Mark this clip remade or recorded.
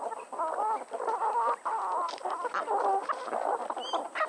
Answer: recorded